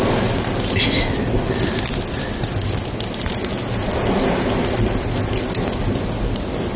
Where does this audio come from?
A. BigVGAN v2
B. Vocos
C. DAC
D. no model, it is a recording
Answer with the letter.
D